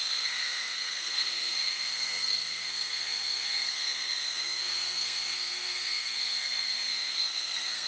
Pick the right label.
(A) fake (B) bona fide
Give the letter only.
A